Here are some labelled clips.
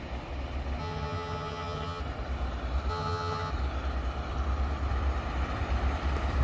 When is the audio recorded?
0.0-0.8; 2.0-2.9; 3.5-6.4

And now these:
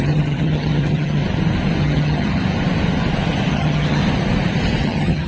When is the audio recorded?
1.2-1.8; 2.4-3.5; 4.0-4.8

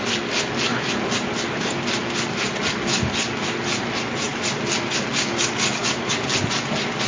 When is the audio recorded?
0.0-7.1

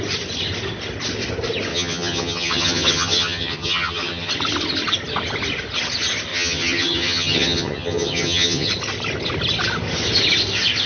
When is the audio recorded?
0.0-1.7; 4.3-6.3; 8.7-10.9